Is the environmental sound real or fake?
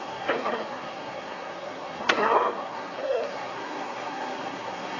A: fake